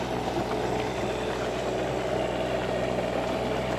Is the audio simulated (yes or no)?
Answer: no